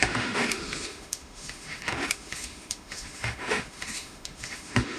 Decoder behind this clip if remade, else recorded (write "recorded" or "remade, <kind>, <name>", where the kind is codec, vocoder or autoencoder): remade, autoencoder, DAC-VAE